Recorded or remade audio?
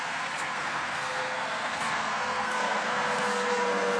remade